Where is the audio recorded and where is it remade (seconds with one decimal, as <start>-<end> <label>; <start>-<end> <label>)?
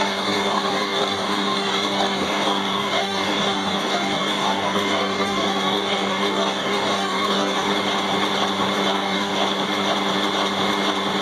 0.0-7.7 remade; 7.7-8.9 recorded; 8.9-9.3 remade; 9.3-11.2 recorded